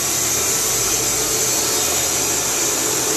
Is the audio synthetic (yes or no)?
no